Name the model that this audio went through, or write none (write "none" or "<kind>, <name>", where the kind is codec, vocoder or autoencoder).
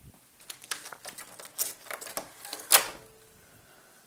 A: none